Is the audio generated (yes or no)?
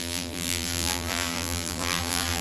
yes